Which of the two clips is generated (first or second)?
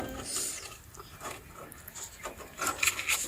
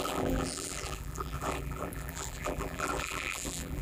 second